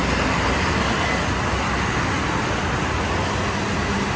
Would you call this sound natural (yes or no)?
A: yes